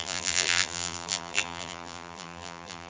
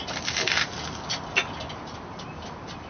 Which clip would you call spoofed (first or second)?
first